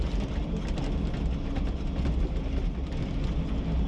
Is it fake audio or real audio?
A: real